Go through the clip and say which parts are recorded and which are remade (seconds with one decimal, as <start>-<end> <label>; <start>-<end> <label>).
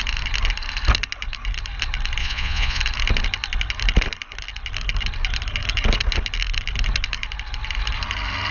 0.0-2.2 recorded; 2.2-2.8 remade; 2.8-8.5 recorded